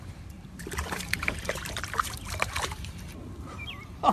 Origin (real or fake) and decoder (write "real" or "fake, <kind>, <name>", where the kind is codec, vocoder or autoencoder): fake, vocoder, BigVGAN v2